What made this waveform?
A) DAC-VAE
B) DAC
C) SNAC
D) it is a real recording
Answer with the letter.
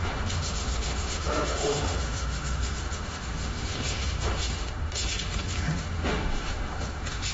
A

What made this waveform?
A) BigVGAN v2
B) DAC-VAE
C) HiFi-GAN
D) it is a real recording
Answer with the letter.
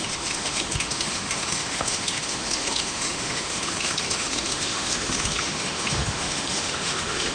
B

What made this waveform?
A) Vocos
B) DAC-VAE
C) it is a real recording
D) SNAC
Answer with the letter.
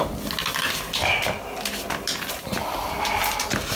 C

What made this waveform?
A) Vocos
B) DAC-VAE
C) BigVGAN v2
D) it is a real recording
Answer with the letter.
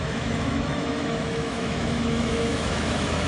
B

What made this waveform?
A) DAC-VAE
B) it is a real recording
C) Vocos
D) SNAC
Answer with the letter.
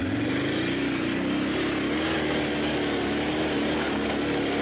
B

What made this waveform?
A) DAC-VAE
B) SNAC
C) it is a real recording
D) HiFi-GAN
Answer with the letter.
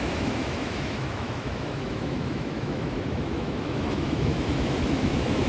A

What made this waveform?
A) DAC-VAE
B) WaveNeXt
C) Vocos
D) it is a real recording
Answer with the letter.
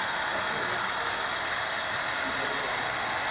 D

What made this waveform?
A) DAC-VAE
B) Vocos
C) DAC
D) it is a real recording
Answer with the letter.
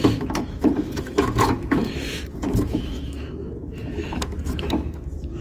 A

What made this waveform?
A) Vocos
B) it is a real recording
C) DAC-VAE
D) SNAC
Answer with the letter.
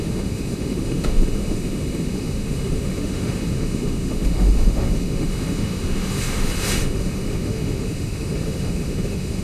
C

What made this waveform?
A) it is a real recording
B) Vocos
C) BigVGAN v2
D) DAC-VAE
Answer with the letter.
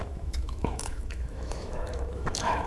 D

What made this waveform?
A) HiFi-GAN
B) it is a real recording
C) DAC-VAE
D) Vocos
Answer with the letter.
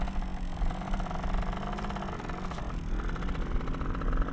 B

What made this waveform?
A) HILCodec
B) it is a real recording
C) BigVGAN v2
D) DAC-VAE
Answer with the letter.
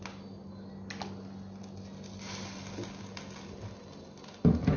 B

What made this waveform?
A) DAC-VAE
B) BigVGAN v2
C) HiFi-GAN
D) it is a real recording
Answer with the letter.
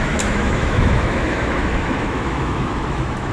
A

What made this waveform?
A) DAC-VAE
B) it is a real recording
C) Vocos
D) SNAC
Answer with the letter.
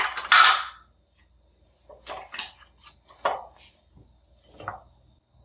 B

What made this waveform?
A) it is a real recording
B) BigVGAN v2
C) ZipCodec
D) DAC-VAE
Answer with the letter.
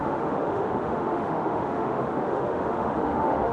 D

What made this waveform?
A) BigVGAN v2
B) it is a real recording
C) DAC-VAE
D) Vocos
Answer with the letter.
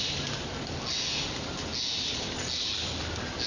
B